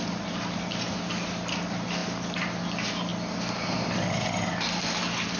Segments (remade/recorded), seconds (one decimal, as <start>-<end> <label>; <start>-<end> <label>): 0.0-5.4 recorded